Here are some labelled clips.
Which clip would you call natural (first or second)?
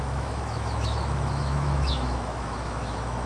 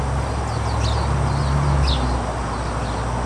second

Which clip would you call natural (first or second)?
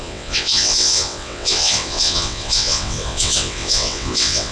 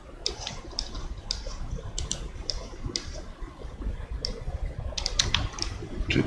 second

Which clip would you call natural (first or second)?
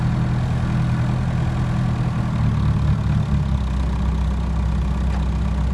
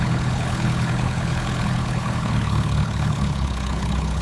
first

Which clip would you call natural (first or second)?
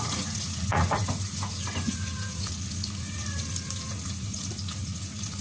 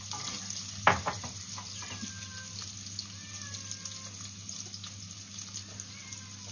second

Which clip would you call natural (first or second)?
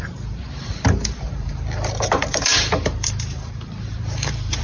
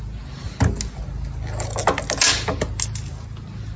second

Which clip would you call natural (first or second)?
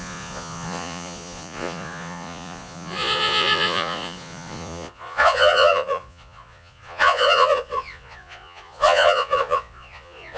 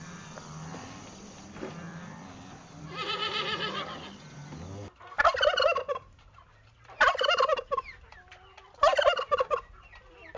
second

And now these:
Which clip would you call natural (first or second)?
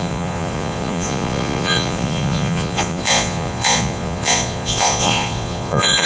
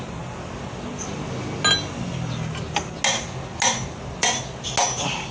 second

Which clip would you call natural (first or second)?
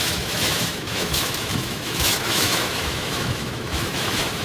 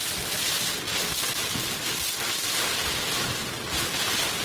second